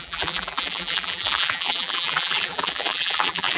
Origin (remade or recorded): remade